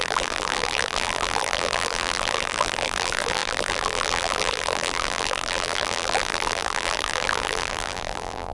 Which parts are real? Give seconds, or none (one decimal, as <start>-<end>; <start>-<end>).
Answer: none